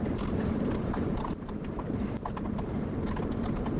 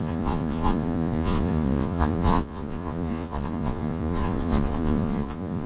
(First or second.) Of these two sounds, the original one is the first